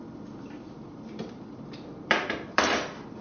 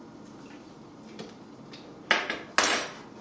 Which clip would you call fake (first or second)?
first